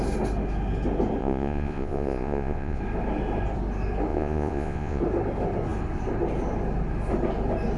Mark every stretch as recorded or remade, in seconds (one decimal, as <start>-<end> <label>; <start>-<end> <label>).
0.0-1.2 recorded; 1.2-2.8 remade; 2.8-4.1 recorded; 4.1-5.0 remade; 5.0-7.8 recorded